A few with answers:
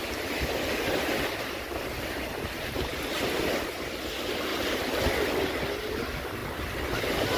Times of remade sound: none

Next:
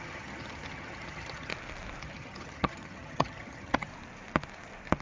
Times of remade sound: 0.0-1.5 (vocoder, HiFi-GAN); 2.0-3.9

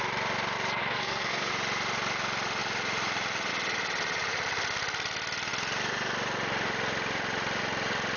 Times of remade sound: 0.8-1.5 (codec, SNAC)

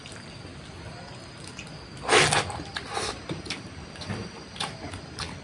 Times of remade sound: 2.7-5.0 (vocoder, BigVGAN v2)

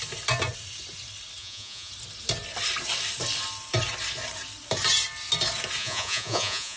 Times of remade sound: 1.4-1.9 (vocoder, Vocos); 5.8-6.8

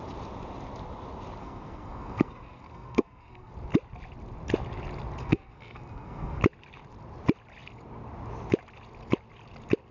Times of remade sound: 1.4-3.5 (codec, SNAC); 5.2-6.4